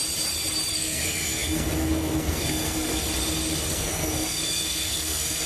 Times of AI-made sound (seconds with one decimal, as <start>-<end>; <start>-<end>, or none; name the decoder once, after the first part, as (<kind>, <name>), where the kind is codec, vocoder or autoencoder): 0.7-3.0 (codec, SNAC); 3.7-5.5